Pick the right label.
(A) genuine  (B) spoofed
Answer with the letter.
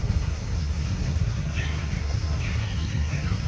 B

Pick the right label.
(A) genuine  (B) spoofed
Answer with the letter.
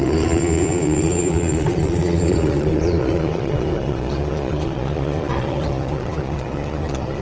B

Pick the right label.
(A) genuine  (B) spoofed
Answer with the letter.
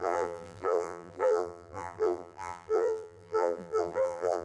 B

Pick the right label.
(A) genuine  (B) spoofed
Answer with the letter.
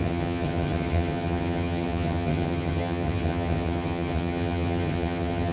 B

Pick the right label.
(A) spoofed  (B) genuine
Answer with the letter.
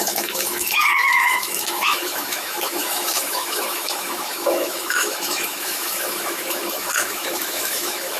A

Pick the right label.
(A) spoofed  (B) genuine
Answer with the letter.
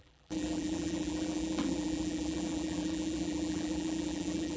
A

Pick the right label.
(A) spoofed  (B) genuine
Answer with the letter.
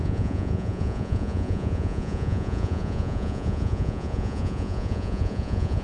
A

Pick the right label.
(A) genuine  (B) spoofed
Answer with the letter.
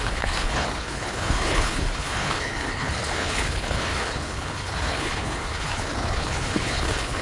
B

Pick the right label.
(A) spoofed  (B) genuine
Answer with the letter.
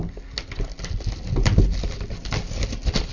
B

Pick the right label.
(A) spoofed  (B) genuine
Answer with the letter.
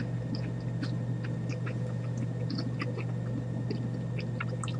B